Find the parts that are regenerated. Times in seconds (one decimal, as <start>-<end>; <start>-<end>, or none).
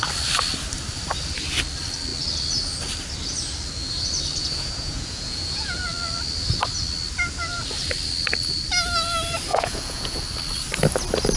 4.4-5.8; 9.5-10.2